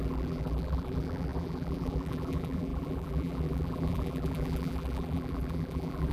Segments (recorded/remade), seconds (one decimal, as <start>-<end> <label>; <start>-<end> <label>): 0.0-6.1 remade